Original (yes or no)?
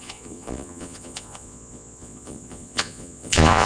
no